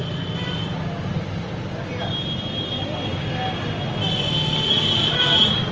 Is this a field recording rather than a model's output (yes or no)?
yes